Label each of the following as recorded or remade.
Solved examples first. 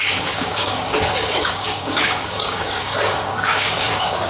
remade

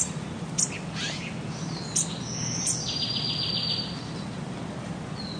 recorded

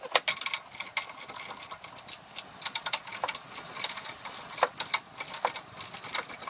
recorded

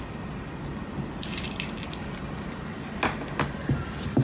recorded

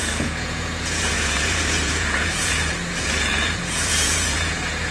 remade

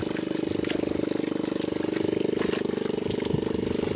recorded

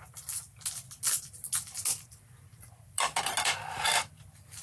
recorded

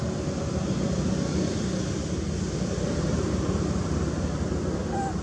recorded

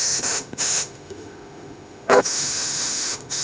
remade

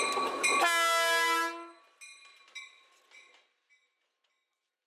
recorded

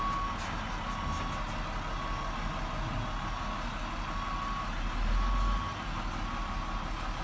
recorded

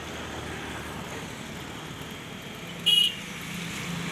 recorded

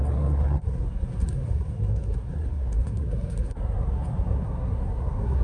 remade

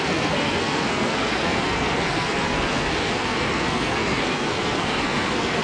remade